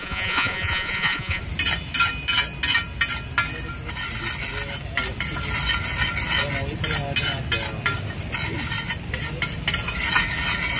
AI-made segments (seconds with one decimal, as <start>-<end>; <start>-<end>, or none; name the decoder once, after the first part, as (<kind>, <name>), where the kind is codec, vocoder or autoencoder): 0.0-1.4 (vocoder, Vocos)